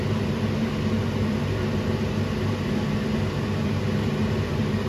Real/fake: real